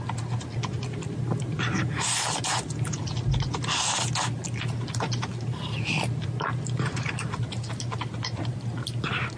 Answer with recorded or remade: recorded